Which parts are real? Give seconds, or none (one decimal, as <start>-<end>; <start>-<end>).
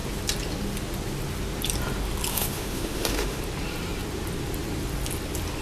0.0-2.3; 3.4-5.6